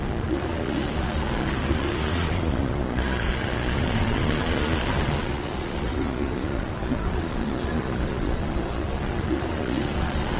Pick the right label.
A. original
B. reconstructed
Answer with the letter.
B